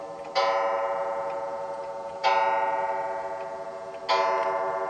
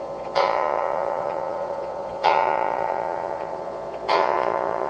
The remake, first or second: second